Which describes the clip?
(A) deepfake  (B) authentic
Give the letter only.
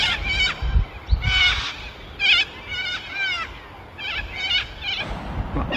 B